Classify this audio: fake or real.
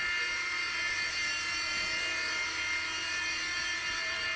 real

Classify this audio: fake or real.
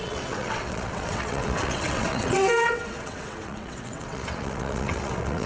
fake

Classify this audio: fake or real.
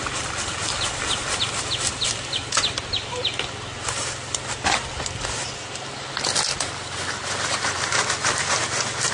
real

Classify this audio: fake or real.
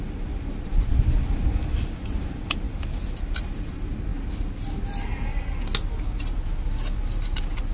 real